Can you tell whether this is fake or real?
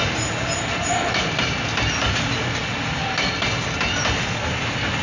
real